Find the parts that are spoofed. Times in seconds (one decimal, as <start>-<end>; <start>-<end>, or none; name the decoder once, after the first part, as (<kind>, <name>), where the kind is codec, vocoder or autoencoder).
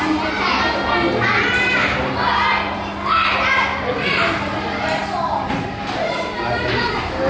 none